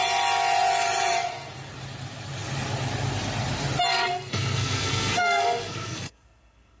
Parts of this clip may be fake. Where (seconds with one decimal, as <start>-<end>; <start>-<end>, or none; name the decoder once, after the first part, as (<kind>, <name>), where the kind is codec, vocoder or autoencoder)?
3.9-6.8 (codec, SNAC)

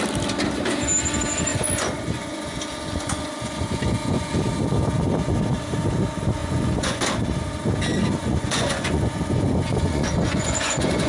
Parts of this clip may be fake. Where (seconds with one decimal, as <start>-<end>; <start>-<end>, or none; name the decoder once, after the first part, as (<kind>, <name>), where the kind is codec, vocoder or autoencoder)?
1.5-4.3 (vocoder, Vocos); 6.4-7.0; 8.2-11.1

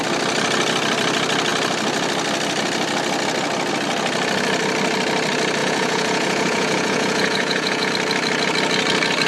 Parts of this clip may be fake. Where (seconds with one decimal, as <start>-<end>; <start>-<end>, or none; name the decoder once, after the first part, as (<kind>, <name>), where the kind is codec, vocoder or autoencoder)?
5.6-7.9 (vocoder, Vocos)